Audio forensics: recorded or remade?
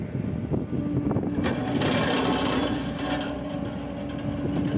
recorded